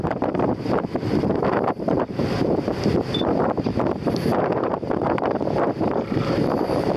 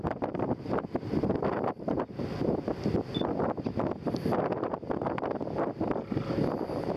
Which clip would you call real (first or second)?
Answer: second